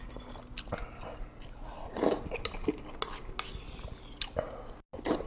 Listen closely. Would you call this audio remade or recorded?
recorded